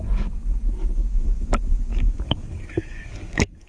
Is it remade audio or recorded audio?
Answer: remade